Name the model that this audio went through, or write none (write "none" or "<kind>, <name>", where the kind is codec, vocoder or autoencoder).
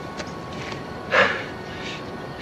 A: vocoder, BigVGAN v2